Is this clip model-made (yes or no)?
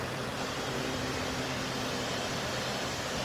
yes